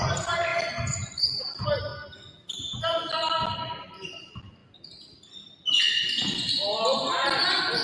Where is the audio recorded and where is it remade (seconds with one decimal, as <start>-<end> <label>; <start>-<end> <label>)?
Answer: 0.0-7.8 recorded